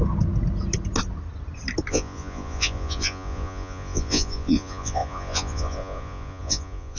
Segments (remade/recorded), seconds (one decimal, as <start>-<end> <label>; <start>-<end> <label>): 0.0-1.9 recorded; 1.9-7.0 remade